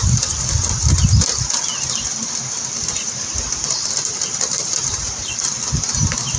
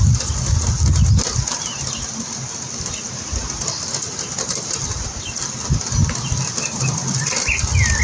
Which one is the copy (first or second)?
first